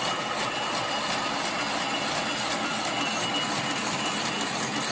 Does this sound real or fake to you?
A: real